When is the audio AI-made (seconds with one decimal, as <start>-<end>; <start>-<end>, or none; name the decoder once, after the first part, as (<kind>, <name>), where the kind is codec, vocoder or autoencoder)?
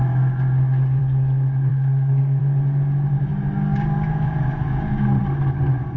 1.7-2.4 (codec, SNAC)